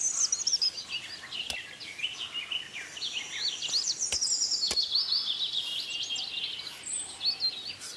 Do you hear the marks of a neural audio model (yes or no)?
no